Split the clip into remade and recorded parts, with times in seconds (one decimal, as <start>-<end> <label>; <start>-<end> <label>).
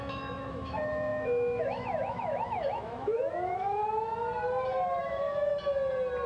0.0-3.8 remade; 3.8-5.0 recorded; 5.0-5.5 remade; 5.5-6.3 recorded